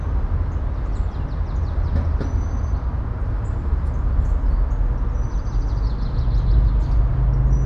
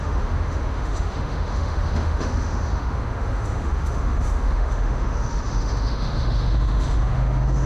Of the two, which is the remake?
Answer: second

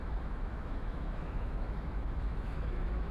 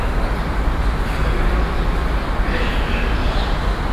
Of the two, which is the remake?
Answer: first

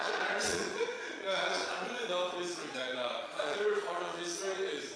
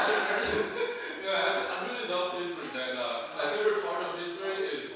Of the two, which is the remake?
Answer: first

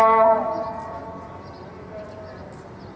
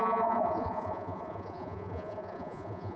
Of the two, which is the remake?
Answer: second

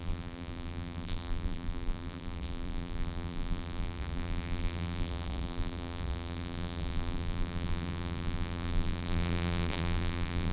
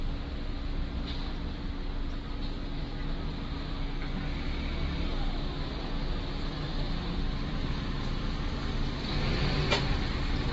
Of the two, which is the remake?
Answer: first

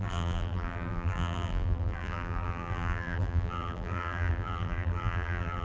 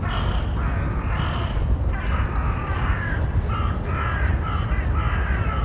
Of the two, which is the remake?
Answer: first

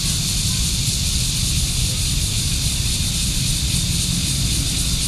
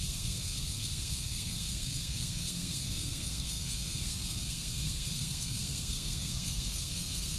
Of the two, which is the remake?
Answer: second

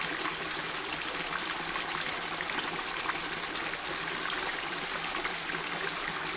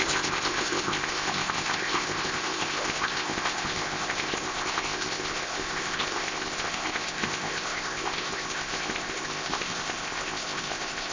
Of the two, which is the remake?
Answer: second